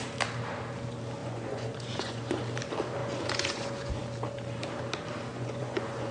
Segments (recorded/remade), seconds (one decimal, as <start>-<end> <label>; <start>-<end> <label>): 0.0-1.2 recorded; 1.2-2.4 remade; 2.4-3.0 recorded; 3.0-4.0 remade; 4.0-5.3 recorded; 5.3-6.1 remade

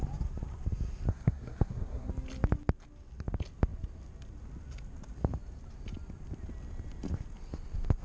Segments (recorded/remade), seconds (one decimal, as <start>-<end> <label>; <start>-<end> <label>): 0.0-1.1 recorded; 1.1-2.1 remade; 2.1-8.0 recorded

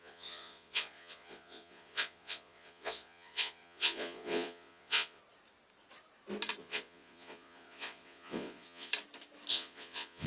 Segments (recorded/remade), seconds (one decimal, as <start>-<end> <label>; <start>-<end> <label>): 0.0-5.2 remade; 5.2-6.6 recorded; 6.6-8.9 remade; 8.9-9.5 recorded; 9.5-10.3 remade

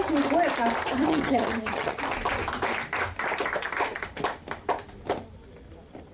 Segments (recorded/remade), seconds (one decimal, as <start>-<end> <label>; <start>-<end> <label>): 0.0-0.9 recorded; 0.9-2.0 remade; 2.0-6.1 recorded

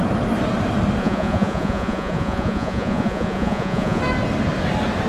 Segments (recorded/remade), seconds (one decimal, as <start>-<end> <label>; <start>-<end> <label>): 0.0-1.0 recorded; 1.0-4.0 remade; 4.0-5.1 recorded

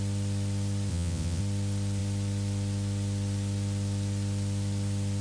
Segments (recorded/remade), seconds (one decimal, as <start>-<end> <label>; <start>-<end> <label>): 0.0-0.9 recorded; 0.9-1.4 remade; 1.4-5.2 recorded

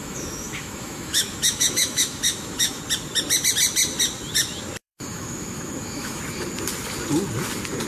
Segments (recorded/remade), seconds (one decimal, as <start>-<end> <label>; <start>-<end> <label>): 0.0-2.8 remade; 2.8-4.8 recorded; 4.8-6.2 remade; 6.2-7.9 recorded

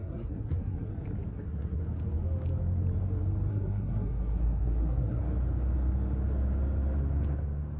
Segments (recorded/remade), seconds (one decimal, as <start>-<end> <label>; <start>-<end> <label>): 0.0-0.9 remade; 0.9-1.3 recorded; 1.3-1.8 remade; 1.8-3.5 recorded; 3.5-5.2 remade; 5.2-7.8 recorded